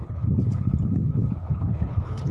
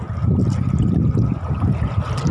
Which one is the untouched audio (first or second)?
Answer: second